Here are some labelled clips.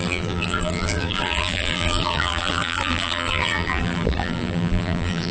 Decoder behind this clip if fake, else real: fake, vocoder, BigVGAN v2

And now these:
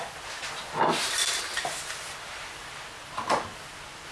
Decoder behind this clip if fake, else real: real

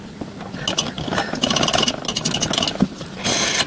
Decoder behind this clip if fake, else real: real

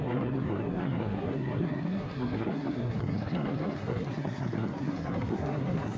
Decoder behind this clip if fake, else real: fake, codec, SNAC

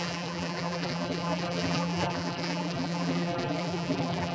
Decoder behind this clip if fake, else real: fake, vocoder, BigVGAN v2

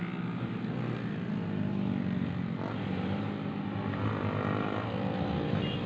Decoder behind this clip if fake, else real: real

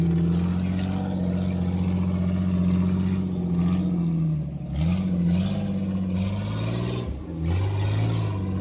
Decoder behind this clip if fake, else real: real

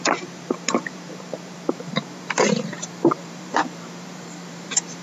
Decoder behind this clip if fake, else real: fake, vocoder, BigVGAN v2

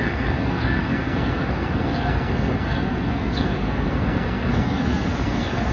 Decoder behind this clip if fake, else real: fake, codec, SNAC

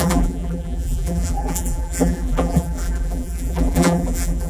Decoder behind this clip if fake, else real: fake, vocoder, BigVGAN v2